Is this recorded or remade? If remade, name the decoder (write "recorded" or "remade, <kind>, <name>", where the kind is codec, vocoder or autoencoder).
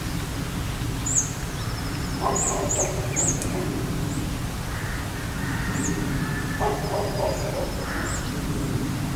recorded